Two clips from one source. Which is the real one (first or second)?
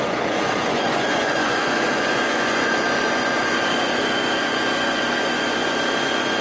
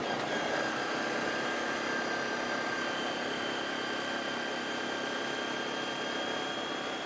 second